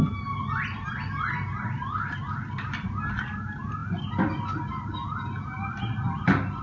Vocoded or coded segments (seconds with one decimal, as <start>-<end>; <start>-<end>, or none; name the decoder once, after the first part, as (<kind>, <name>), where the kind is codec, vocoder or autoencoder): none